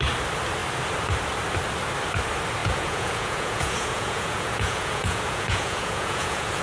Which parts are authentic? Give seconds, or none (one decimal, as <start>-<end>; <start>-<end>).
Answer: 0.0-2.6